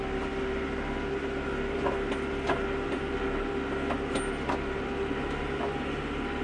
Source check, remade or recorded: recorded